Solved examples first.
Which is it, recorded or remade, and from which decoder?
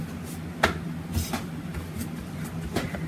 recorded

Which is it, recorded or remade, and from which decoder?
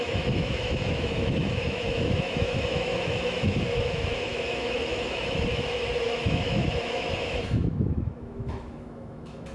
remade, autoencoder, DAC-VAE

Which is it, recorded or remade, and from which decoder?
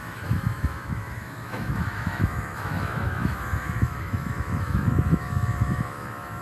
remade, autoencoder, DAC-VAE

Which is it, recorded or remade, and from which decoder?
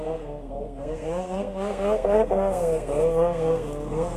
remade, codec, SNAC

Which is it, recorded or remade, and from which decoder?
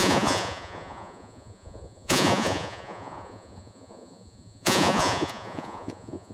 remade, vocoder, Vocos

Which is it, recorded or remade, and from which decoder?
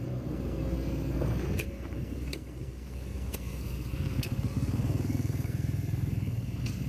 remade, codec, SNAC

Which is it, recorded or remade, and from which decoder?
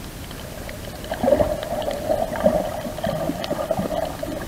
recorded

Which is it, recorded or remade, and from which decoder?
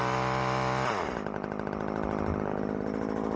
recorded